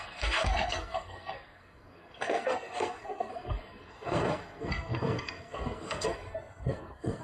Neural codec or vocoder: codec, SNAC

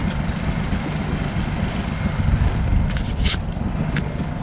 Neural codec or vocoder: none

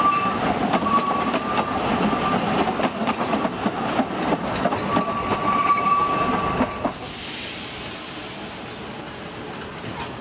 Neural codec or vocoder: none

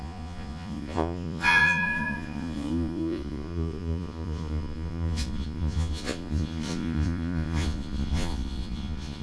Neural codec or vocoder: vocoder, Vocos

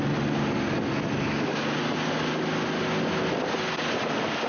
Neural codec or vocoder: none